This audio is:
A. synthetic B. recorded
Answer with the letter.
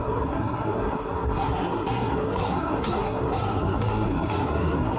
A